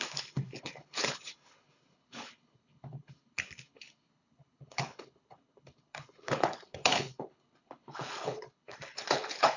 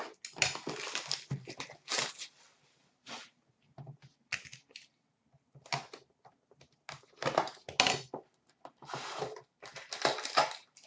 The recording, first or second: second